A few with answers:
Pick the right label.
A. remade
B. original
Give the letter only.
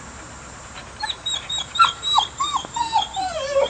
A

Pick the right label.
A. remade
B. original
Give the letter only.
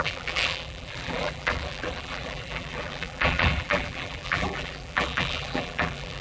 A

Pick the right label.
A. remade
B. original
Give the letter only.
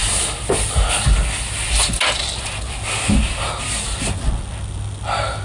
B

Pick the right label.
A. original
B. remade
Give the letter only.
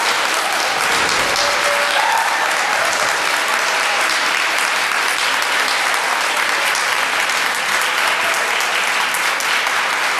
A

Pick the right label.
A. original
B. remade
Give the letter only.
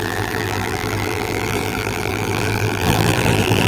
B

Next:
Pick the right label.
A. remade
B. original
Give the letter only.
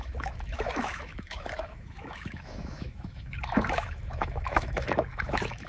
A